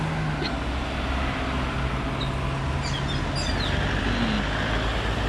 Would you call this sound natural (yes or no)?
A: yes